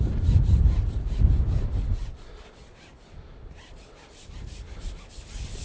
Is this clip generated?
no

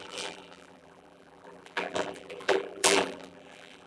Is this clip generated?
yes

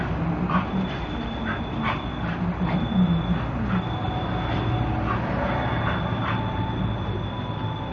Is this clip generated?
no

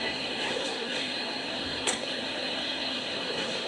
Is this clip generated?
yes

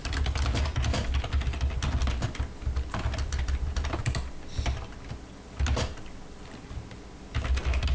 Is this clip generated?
no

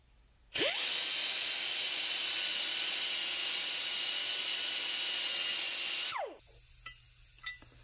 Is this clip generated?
no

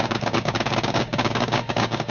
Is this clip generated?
yes